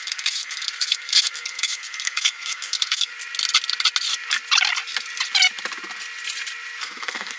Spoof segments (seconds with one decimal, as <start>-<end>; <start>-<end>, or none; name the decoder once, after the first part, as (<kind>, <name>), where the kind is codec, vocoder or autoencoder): 0.0-3.1 (codec, SNAC); 6.8-7.4